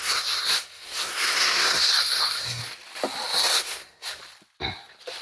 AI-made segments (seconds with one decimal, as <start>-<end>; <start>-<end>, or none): 0.0-2.6; 3.4-4.2